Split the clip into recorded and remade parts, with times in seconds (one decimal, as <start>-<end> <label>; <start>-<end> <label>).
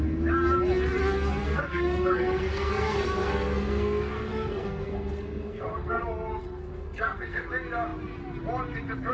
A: 0.0-1.4 recorded; 1.4-6.0 remade; 6.0-6.4 recorded; 6.4-7.5 remade; 7.5-9.1 recorded